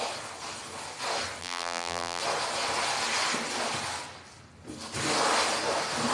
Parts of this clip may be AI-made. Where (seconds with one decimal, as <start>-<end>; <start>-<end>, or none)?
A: 1.4-2.2